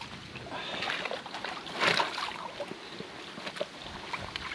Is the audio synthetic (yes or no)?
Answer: no